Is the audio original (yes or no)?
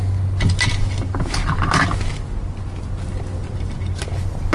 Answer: yes